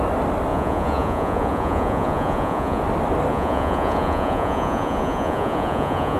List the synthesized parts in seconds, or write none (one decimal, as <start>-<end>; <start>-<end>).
0.5-2.8; 3.3-6.2